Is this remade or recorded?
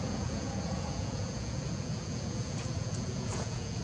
remade